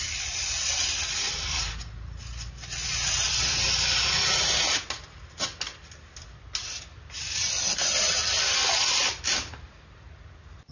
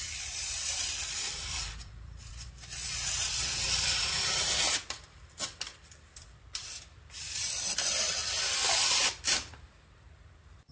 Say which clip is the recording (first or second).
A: first